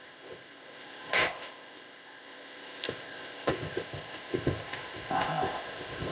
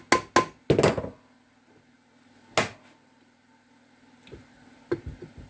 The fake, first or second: first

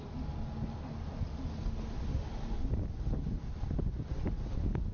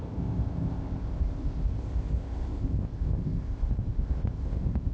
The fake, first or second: second